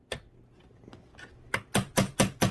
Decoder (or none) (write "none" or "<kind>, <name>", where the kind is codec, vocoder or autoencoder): none